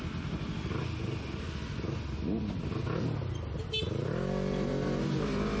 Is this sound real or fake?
real